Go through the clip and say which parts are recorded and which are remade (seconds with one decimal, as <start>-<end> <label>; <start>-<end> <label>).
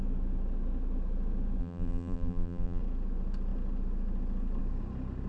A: 0.0-1.6 recorded; 1.6-2.8 remade; 2.8-5.3 recorded